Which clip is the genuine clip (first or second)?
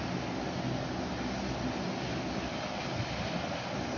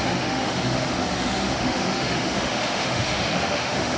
first